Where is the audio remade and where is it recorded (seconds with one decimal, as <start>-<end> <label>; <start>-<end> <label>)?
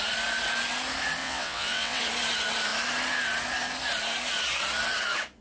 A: 0.0-1.2 recorded; 1.2-2.0 remade; 2.0-5.4 recorded